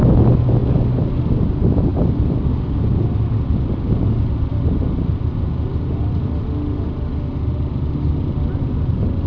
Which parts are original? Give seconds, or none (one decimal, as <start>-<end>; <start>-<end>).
0.0-9.3